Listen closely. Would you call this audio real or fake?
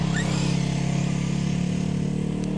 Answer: real